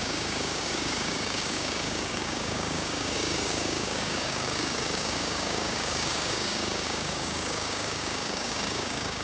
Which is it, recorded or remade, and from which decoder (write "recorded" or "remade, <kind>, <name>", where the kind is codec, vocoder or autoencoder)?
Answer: remade, codec, DAC